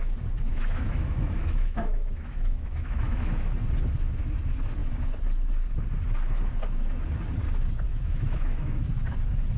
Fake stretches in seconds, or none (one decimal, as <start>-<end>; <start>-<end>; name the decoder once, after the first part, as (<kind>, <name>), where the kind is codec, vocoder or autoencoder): 0.5-3.5 (autoencoder, DAC-VAE); 7.9-8.8